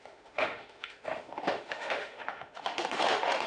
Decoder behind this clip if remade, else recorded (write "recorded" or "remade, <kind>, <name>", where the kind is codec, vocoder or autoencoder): remade, autoencoder, DAC-VAE